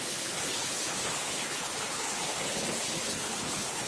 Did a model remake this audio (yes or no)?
yes